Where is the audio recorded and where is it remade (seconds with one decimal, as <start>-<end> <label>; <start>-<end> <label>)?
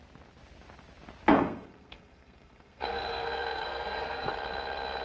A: 0.0-1.3 recorded; 1.3-4.3 remade; 4.3-5.0 recorded